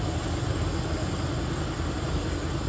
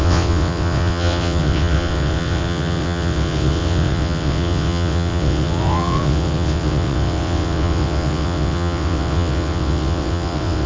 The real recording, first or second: first